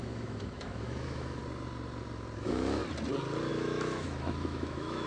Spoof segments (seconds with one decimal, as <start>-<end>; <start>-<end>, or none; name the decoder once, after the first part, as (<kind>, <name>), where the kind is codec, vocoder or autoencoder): 0.0-1.4 (autoencoder, DAC-VAE); 2.4-2.8; 3.5-5.1